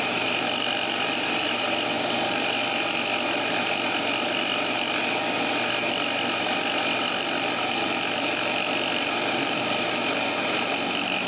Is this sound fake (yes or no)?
no